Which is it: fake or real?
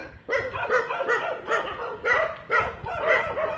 real